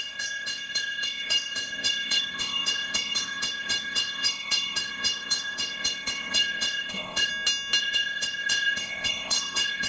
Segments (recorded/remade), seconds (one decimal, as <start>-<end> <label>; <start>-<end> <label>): 0.0-7.3 remade; 7.3-7.8 recorded; 7.8-9.9 remade